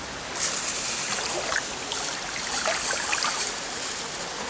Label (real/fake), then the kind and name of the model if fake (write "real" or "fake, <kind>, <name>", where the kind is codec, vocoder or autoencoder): real